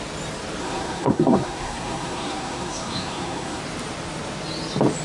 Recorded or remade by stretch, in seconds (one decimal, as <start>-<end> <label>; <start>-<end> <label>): 0.0-0.6 recorded; 0.6-3.6 remade; 3.6-5.0 recorded